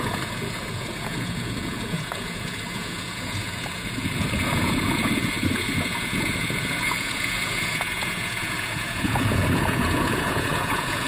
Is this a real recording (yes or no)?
no